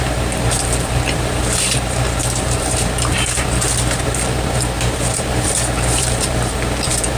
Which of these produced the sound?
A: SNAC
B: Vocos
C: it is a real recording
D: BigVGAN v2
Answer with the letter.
D